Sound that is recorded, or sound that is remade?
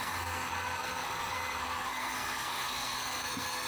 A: remade